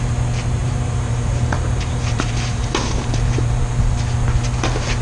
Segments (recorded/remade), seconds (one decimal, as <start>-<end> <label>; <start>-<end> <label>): 0.0-0.6 recorded; 0.6-3.6 remade; 3.6-5.0 recorded